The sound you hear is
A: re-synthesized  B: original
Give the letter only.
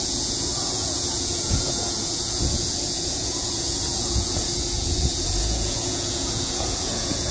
A